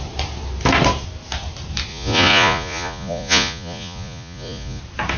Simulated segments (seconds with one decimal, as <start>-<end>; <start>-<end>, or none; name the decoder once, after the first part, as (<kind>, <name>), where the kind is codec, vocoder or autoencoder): 1.9-4.8 (vocoder, Vocos)